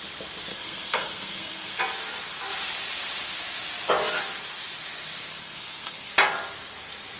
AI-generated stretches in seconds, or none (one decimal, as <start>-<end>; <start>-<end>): 0.5-1.8; 5.4-6.1